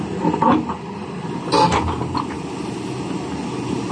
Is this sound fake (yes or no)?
no